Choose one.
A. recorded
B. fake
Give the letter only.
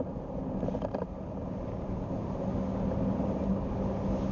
A